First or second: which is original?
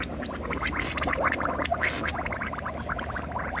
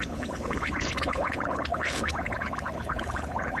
first